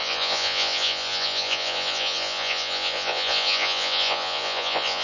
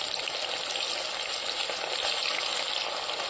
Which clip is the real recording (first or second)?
second